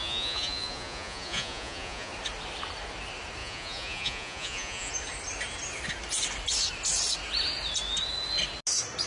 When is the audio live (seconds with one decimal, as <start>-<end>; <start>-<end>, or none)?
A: 2.1-3.4; 4.9-9.1